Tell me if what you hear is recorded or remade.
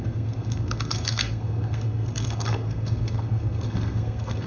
remade